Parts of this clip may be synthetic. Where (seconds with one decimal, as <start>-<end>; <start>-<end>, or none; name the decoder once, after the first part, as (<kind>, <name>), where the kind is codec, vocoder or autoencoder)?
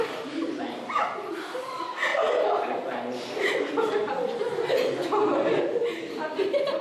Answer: none